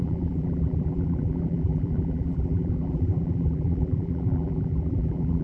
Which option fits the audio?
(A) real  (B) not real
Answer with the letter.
B